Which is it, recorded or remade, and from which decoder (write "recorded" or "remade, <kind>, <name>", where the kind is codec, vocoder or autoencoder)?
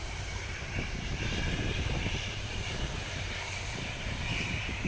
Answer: remade, vocoder, BigVGAN v2